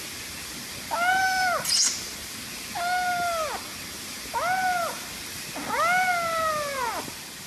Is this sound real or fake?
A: real